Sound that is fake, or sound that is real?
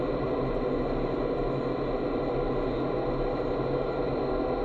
real